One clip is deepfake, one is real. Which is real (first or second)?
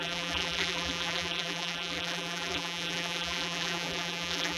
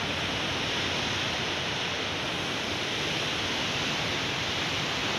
second